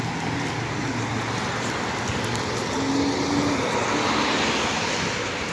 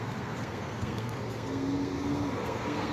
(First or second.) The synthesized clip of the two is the second